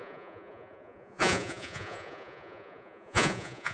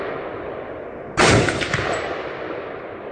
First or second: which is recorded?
second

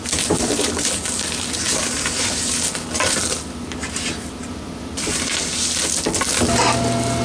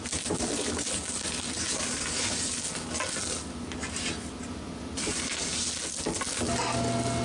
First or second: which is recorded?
second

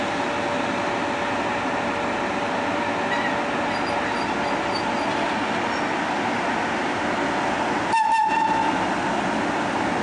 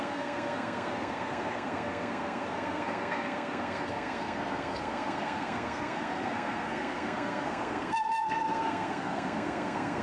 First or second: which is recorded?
first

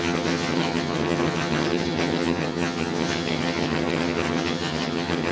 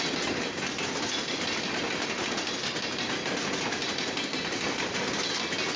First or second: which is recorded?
second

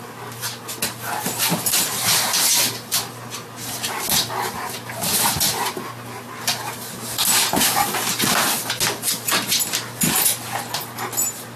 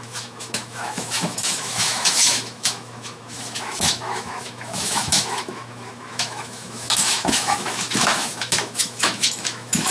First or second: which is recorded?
first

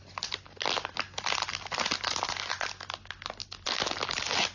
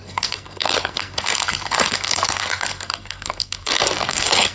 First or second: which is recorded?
first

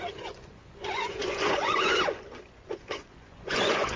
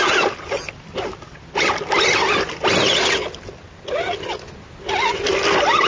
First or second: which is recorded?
second